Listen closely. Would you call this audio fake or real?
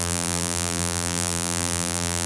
fake